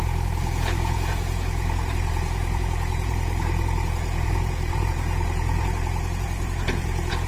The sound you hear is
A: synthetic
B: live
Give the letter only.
A